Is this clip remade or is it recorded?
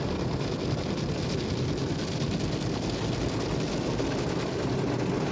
recorded